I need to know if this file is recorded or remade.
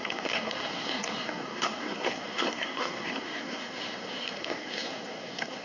remade